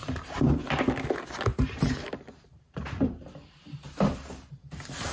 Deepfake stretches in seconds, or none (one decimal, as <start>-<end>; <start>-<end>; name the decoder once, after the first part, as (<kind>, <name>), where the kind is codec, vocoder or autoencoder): 0.0-0.6 (vocoder, BigVGAN v2); 1.5-4.6